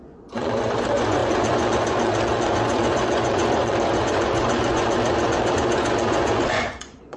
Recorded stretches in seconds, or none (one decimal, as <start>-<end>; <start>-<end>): none